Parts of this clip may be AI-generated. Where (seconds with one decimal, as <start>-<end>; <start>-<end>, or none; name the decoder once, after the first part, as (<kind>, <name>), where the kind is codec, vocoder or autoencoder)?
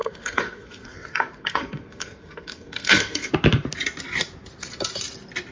0.0-3.3 (codec, SNAC)